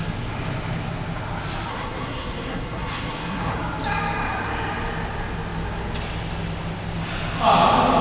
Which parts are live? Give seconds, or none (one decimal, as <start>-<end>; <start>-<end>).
0.0-1.7; 3.6-8.0

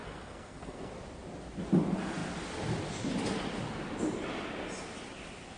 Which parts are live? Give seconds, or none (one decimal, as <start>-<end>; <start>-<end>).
0.9-5.6